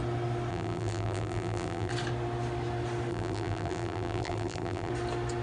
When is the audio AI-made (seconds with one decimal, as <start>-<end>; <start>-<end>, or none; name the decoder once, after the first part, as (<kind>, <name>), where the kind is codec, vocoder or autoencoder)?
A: 0.5-1.9 (vocoder, BigVGAN v2); 3.1-4.9